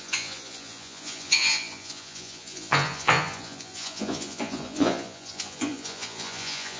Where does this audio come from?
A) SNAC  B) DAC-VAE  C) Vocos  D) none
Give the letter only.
C